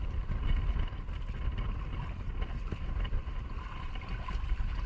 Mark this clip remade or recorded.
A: recorded